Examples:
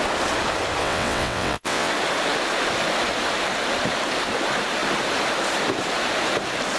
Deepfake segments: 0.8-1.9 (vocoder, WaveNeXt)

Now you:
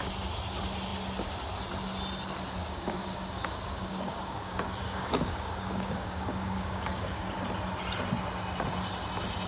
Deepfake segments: 2.6-7.3 (codec, DAC)

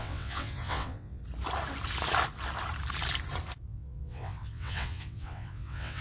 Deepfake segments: 0.0-1.2 (vocoder, WaveNeXt); 3.6-6.0

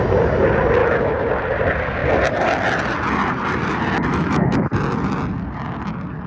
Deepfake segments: 0.8-1.3 (autoencoder, DAC-VAE); 4.1-4.7

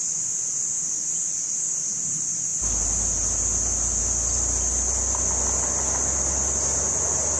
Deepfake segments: none

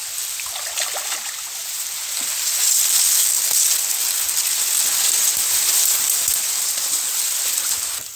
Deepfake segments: none

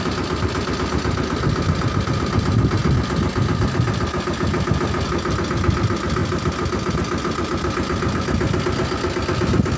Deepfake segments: none